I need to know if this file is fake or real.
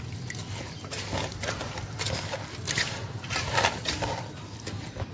real